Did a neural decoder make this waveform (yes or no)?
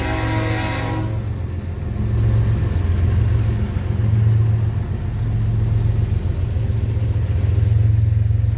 no